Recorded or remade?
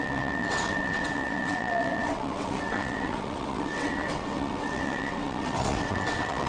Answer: remade